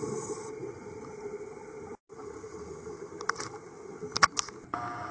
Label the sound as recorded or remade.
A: recorded